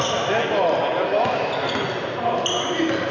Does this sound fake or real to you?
real